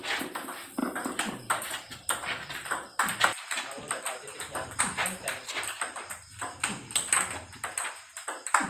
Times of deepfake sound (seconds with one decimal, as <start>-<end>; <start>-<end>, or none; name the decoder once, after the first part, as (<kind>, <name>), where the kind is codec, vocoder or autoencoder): 0.8-4.8 (vocoder, BigVGAN v2)